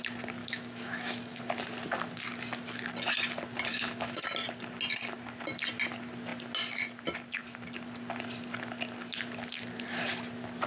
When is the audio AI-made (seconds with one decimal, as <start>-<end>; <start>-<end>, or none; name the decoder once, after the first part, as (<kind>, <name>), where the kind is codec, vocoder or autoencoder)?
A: 0.4-1.4 (autoencoder, DAC-VAE); 3.7-4.2